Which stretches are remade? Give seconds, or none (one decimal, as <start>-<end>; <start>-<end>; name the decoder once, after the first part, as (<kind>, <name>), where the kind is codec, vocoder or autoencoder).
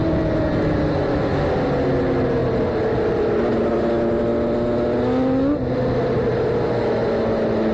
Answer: none